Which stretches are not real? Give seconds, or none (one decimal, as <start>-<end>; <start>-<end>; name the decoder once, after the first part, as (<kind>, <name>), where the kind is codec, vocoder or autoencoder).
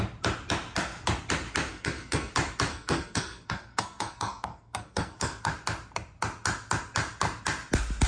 1.7-2.3 (codec, SNAC); 2.7-5.5